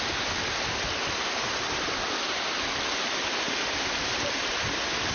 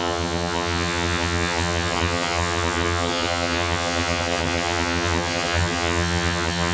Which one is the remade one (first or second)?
second